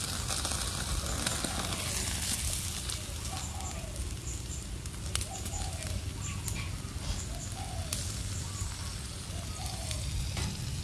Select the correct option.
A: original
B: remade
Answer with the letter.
A